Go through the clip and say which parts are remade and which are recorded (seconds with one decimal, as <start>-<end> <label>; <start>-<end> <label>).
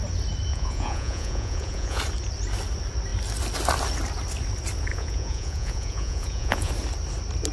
0.0-0.5 recorded; 0.5-2.0 remade; 2.0-4.9 recorded; 4.9-6.7 remade; 6.7-7.5 recorded